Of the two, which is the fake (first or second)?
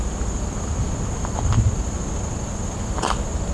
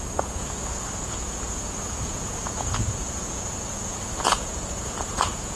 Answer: second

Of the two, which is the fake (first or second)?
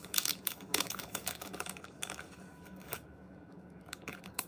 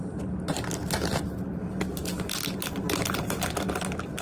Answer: first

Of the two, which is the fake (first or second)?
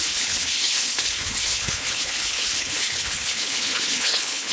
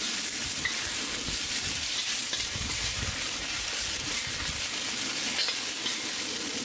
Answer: first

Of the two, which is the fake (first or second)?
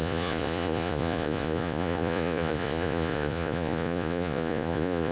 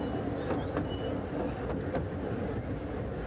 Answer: first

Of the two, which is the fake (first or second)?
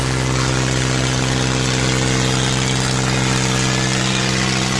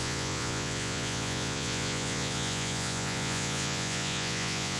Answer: second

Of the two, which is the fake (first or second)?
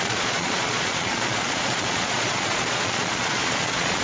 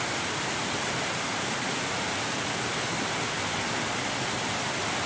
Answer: first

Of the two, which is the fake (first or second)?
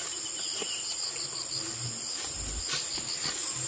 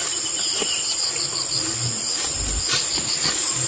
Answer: second